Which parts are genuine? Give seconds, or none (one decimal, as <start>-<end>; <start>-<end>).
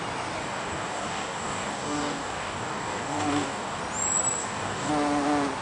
0.0-0.4; 3.8-4.4; 4.9-5.6